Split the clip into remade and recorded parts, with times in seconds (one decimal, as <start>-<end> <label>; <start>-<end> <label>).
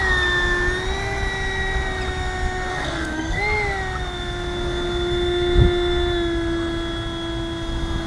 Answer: 0.0-2.7 recorded; 2.7-3.4 remade; 3.4-8.1 recorded